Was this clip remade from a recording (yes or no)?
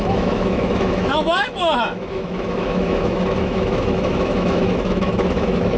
yes